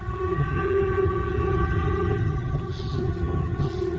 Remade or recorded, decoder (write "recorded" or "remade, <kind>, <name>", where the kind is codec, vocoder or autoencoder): remade, vocoder, HiFi-GAN